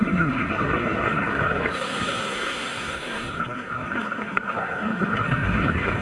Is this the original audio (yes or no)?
no